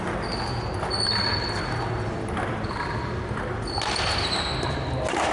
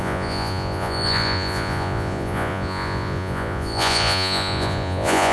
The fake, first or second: second